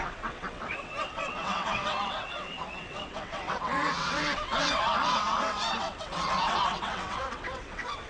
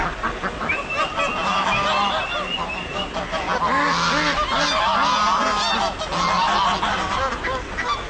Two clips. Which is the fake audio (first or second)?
first